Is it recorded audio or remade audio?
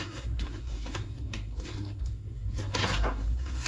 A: remade